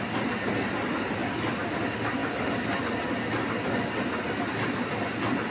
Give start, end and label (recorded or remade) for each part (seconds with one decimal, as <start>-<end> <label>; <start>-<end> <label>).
0.0-5.5 recorded

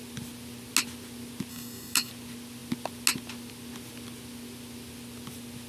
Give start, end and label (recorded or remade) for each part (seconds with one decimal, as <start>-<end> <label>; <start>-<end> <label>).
0.0-1.5 recorded; 1.5-2.1 remade; 2.1-5.7 recorded

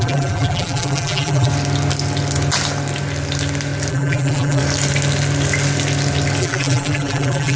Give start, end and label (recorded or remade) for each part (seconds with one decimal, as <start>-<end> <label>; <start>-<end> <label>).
0.0-1.5 remade; 1.5-3.9 recorded; 3.9-4.6 remade; 4.6-6.4 recorded; 6.4-7.6 remade

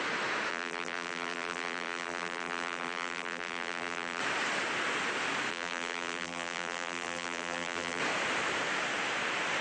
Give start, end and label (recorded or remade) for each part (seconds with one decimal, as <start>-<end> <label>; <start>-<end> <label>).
0.0-0.5 recorded; 0.5-4.2 remade; 4.2-5.5 recorded; 5.5-8.0 remade; 8.0-9.6 recorded

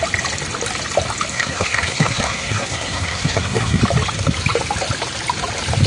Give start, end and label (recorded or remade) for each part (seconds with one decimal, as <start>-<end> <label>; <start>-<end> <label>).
0.0-1.3 recorded; 1.3-3.8 remade; 3.8-5.9 recorded

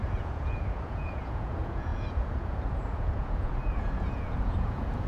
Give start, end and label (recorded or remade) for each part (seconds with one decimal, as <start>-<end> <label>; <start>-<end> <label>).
0.0-5.1 remade

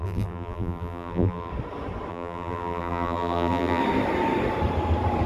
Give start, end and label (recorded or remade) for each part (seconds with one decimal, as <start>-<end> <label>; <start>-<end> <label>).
0.0-1.5 remade; 1.5-2.1 recorded; 2.1-3.8 remade; 3.8-5.3 recorded

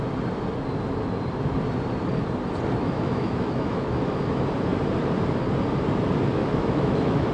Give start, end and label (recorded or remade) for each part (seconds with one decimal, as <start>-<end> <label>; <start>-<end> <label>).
0.0-2.8 recorded; 2.8-4.4 remade; 4.4-6.4 recorded; 6.4-7.3 remade